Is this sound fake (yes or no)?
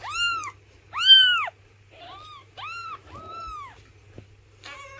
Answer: no